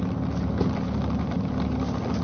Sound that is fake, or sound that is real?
real